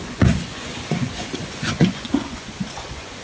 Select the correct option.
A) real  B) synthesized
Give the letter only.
B